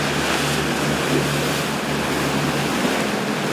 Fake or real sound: real